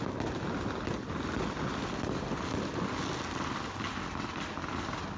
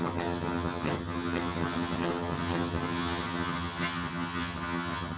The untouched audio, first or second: first